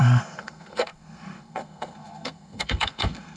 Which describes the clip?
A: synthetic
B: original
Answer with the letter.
A